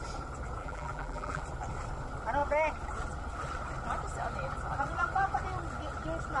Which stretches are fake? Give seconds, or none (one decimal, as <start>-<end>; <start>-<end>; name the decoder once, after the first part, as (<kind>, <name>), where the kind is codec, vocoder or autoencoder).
0.6-1.4 (vocoder, BigVGAN v2)